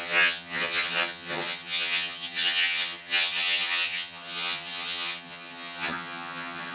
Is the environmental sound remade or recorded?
remade